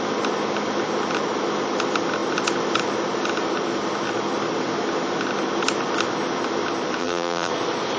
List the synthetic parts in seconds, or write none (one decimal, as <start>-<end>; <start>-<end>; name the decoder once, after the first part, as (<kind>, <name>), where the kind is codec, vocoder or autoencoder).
7.0-7.5 (vocoder, BigVGAN v2)